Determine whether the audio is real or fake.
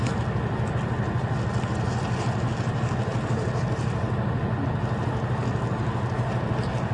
real